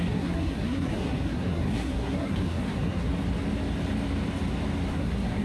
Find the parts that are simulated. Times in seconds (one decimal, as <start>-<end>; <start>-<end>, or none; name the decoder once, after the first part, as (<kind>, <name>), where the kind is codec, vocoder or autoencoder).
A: 0.0-3.1 (codec, SNAC); 4.9-5.4